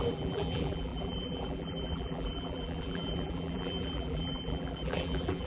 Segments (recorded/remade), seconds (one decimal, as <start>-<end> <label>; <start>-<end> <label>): 0.0-5.5 remade